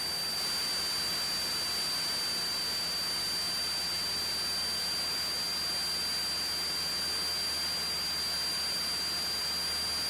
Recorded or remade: recorded